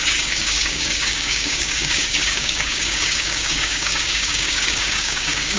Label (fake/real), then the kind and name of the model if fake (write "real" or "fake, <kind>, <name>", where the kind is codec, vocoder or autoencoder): fake, codec, DAC